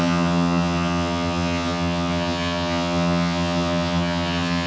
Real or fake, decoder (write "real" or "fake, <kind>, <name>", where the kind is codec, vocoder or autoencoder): fake, vocoder, HiFi-GAN